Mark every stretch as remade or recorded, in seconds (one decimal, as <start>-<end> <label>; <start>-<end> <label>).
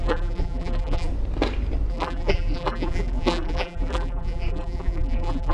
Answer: 0.0-1.1 remade; 1.1-1.9 recorded; 1.9-5.5 remade